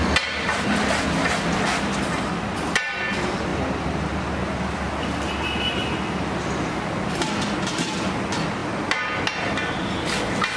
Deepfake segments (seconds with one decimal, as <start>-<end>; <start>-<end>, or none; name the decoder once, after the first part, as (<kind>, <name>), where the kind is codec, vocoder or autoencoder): none